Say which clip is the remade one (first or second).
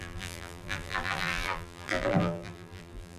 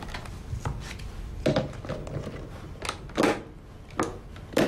first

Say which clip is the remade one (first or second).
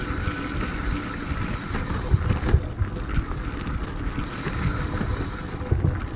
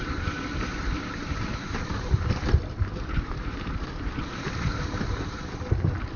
second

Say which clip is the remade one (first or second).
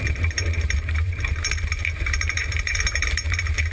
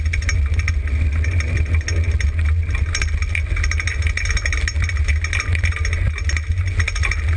first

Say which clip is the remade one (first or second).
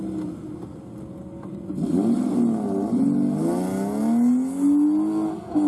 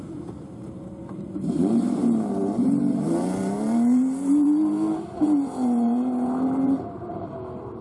second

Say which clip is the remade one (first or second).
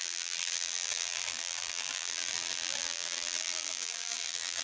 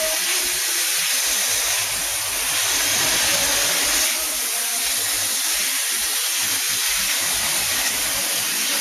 first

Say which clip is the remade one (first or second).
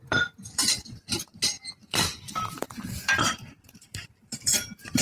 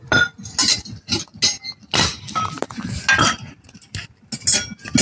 first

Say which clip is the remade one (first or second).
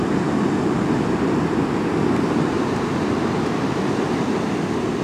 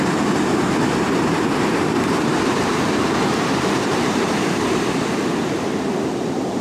second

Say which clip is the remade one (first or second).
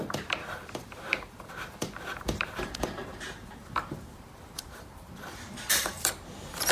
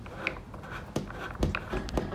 first